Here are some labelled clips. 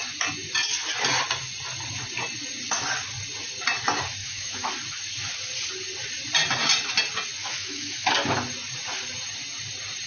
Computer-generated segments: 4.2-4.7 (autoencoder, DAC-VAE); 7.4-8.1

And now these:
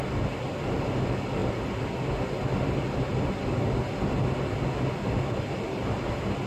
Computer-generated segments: none